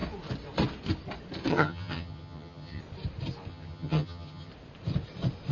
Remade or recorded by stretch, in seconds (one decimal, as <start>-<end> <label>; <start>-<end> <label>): 0.0-1.5 recorded; 1.5-2.8 remade; 2.8-3.5 recorded; 3.5-4.5 remade; 4.5-5.5 recorded